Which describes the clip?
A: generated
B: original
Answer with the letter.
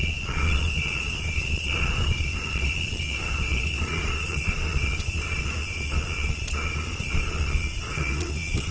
A